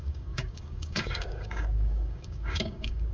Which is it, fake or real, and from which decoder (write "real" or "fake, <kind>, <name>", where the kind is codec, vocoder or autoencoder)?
fake, codec, DAC